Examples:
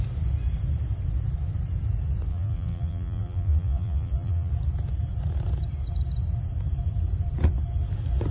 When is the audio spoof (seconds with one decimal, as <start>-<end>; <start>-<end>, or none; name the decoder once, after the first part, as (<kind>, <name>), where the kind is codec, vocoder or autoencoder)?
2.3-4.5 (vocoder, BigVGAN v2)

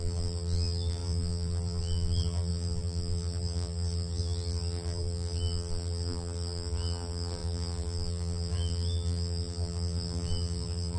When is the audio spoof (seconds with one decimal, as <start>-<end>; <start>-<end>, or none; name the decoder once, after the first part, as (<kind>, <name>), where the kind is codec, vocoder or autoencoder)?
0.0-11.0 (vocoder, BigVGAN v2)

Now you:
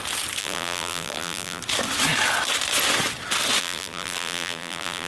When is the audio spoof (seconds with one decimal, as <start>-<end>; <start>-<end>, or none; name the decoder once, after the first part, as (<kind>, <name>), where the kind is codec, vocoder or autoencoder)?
0.4-1.6 (vocoder, BigVGAN v2); 3.6-5.1

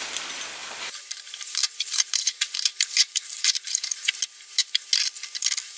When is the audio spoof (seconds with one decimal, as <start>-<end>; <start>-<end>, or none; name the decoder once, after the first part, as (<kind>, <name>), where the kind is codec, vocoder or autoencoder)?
0.6-4.1 (vocoder, BigVGAN v2)